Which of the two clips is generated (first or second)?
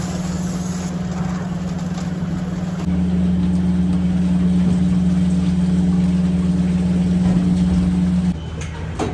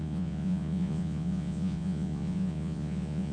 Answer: second